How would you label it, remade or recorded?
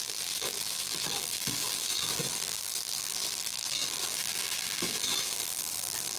remade